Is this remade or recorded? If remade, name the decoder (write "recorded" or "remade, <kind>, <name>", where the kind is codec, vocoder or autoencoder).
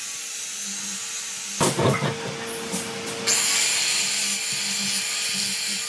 recorded